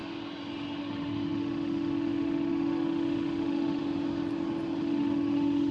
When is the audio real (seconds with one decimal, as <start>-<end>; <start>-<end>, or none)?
0.0-0.8; 3.8-4.8

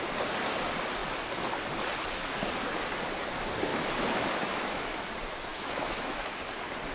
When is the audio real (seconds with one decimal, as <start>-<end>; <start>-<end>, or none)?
0.0-3.7; 5.1-5.5; 6.4-6.9

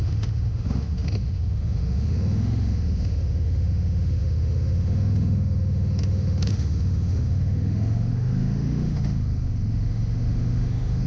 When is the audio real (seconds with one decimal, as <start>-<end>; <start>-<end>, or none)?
none

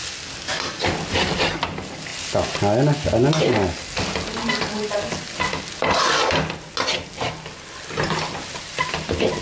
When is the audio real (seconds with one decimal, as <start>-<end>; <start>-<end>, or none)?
0.0-9.4

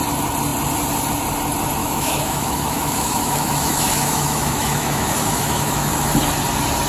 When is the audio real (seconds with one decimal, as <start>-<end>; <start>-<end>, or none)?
0.0-1.8; 5.9-6.9

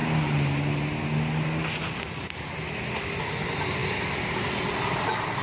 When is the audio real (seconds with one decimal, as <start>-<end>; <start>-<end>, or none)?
0.0-5.4